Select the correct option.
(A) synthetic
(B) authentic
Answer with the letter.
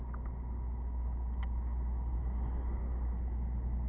B